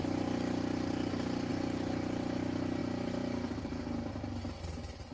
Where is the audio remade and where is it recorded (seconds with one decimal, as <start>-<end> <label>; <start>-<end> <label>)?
0.0-2.8 recorded; 2.8-4.1 remade; 4.1-5.1 recorded